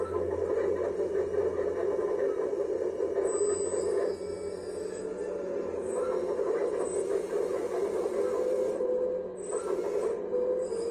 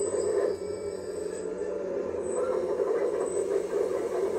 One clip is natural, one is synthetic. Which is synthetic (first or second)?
second